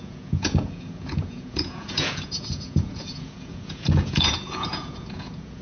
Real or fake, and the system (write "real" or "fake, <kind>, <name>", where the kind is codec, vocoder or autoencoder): fake, vocoder, Vocos